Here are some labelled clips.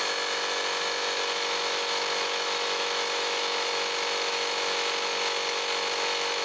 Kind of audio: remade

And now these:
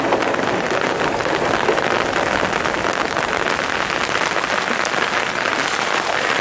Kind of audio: recorded